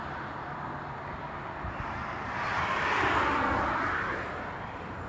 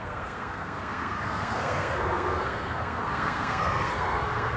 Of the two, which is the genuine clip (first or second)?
first